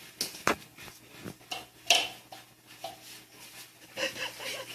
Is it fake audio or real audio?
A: real